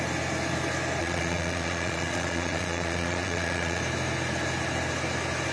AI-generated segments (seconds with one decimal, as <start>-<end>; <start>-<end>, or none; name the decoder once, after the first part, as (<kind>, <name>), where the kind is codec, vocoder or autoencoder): 1.0-3.8 (vocoder, Vocos)

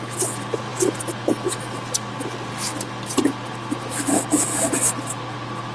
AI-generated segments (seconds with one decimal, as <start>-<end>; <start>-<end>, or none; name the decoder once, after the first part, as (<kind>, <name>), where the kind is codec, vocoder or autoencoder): none